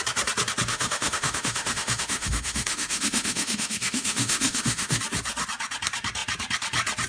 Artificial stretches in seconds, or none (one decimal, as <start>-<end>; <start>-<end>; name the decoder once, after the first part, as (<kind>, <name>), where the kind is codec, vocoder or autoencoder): 0.7-5.0 (autoencoder, DAC-VAE)